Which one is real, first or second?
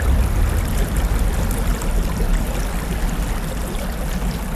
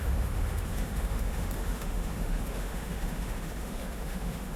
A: first